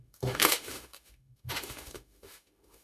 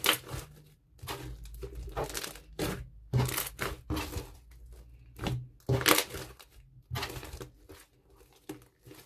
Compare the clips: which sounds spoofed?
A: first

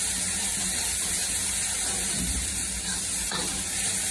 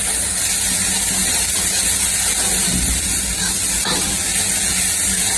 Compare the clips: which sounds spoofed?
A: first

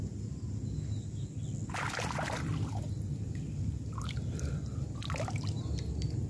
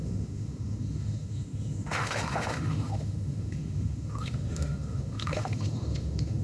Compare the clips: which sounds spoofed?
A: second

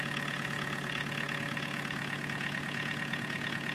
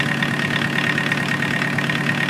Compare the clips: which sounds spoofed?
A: first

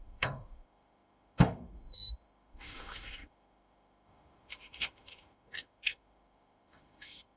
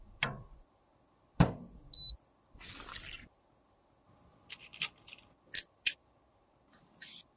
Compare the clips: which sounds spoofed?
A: first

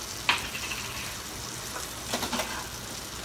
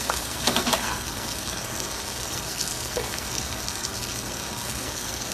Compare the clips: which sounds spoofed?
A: second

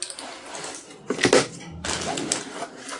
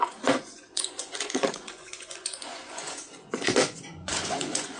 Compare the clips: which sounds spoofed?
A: second